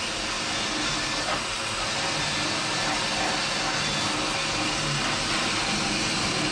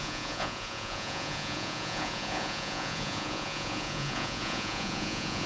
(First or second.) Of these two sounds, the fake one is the second